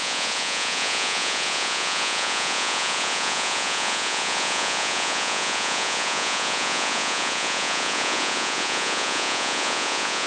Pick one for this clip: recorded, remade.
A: remade